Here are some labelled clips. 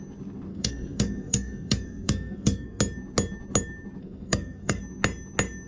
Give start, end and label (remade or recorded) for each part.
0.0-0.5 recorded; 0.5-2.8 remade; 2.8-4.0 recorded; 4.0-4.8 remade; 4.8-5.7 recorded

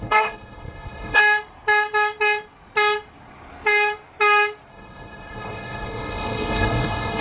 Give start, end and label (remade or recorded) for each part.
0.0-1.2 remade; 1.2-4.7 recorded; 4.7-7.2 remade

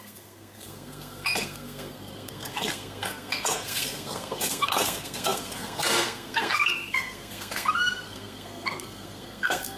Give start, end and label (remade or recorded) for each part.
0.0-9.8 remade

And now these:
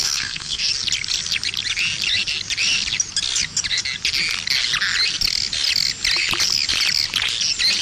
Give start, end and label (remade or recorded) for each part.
0.0-0.7 remade; 0.7-7.8 recorded

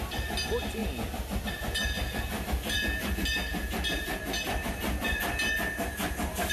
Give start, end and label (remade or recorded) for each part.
0.0-6.5 recorded

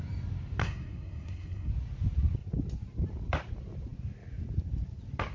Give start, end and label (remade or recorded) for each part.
0.0-0.6 recorded; 0.6-1.7 remade; 1.7-5.3 recorded

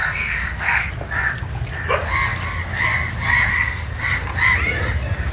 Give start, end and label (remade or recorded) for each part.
0.0-0.9 remade; 0.9-3.5 recorded; 3.5-4.0 remade; 4.0-5.3 recorded